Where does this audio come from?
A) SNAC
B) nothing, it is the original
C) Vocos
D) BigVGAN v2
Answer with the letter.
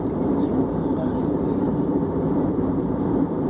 D